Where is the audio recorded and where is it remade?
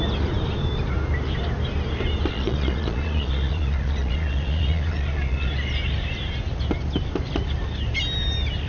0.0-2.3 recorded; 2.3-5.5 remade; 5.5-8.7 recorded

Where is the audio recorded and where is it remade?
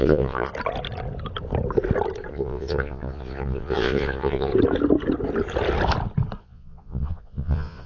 0.0-0.5 remade; 0.5-2.3 recorded; 2.3-4.5 remade; 4.5-6.4 recorded; 6.4-7.9 remade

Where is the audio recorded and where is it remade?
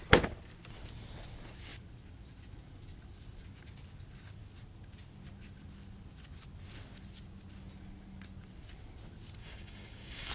0.0-9.4 recorded; 9.4-10.3 remade